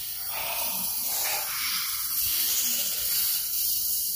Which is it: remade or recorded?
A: remade